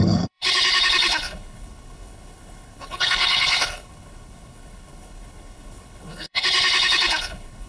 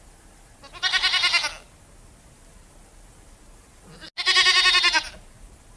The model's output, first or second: first